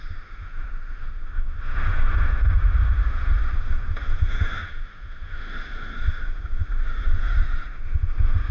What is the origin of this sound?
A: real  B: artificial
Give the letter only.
B